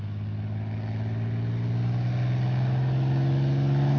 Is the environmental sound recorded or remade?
recorded